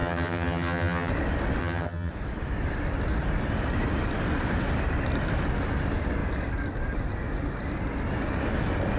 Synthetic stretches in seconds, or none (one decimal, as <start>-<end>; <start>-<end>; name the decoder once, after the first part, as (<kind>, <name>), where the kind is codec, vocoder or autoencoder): 0.0-1.1 (vocoder, HiFi-GAN); 1.6-2.1